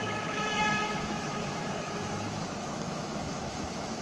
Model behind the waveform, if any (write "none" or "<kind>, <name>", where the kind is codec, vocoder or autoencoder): autoencoder, DAC-VAE